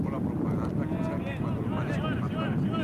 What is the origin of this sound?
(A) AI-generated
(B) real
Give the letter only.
B